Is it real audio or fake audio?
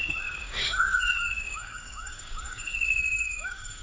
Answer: fake